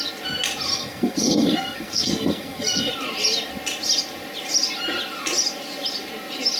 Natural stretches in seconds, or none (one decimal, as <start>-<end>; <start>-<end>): 0.0-0.7; 2.9-6.6